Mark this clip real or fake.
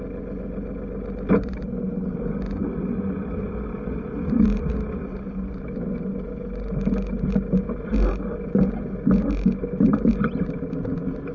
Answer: real